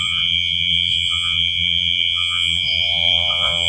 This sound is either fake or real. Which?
fake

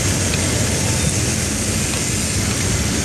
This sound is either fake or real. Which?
real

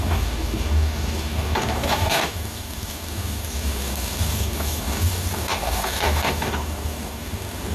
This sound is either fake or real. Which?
fake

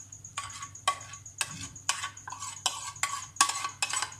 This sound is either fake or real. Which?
real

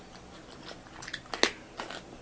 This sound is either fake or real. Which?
real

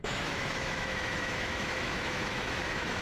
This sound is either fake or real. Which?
fake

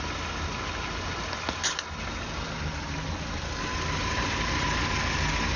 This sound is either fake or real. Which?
real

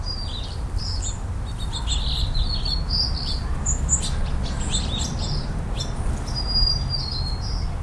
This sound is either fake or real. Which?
real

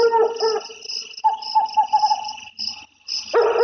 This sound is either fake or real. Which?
real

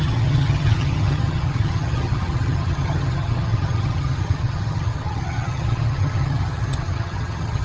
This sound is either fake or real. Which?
fake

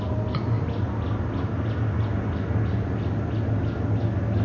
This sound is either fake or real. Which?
real